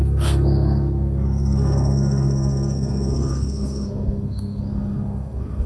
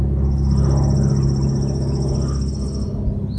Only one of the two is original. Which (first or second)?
second